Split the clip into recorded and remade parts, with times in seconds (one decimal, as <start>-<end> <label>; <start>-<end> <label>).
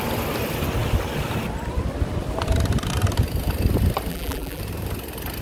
0.0-4.1 recorded; 4.1-4.6 remade; 4.6-5.4 recorded